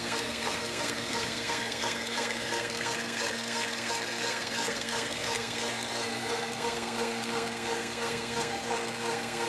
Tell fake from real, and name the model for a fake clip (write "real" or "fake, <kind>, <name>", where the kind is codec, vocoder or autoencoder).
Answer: fake, codec, SNAC